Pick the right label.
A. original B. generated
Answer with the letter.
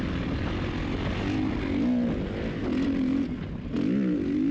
A